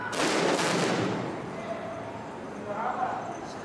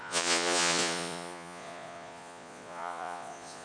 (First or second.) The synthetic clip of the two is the second